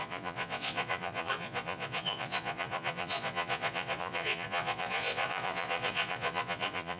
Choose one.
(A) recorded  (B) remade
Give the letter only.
B